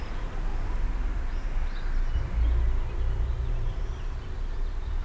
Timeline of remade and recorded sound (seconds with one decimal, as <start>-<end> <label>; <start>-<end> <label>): 0.0-0.5 remade; 0.5-3.5 recorded; 3.5-5.0 remade